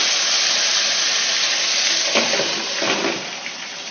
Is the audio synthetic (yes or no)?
no